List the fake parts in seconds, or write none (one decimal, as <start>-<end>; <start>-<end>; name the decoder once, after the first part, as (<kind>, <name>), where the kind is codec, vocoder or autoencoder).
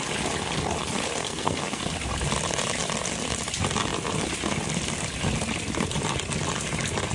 1.2-1.8 (codec, SNAC)